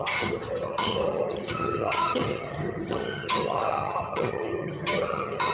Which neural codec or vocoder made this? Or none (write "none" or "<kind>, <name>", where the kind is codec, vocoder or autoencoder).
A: vocoder, HiFi-GAN